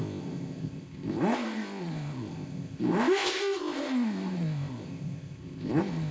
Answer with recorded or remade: remade